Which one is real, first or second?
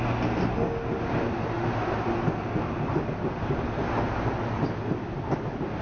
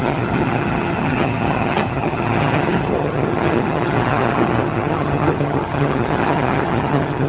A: first